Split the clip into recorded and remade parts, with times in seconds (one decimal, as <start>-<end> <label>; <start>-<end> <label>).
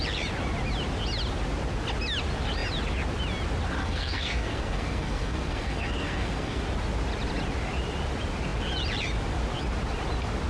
0.0-3.8 recorded; 3.8-6.6 remade; 6.6-10.5 recorded